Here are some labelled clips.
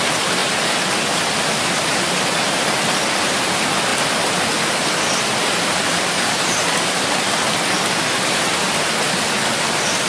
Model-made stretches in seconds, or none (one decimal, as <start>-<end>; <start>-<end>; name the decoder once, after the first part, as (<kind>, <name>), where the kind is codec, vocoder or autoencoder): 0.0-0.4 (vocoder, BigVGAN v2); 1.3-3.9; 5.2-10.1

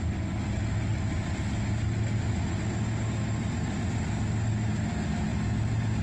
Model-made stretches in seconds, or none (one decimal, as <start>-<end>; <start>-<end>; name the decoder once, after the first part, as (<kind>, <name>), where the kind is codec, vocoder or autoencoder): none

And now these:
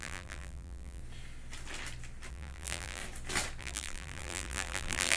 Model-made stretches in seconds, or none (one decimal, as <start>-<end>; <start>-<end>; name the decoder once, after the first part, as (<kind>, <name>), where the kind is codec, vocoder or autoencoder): 0.0-1.0 (vocoder, BigVGAN v2); 2.3-3.0; 3.6-5.2